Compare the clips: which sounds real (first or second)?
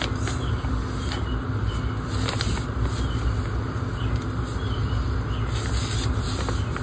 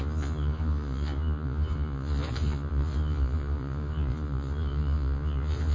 first